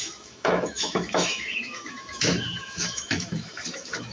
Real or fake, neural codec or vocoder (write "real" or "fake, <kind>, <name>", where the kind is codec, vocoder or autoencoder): fake, autoencoder, DAC-VAE